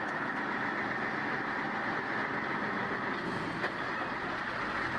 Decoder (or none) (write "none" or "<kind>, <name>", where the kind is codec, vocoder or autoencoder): none